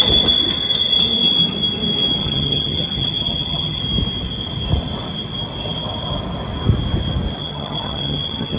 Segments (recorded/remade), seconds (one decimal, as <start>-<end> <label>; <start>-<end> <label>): 0.0-2.2 recorded; 2.2-3.8 remade; 3.8-7.4 recorded; 7.4-8.6 remade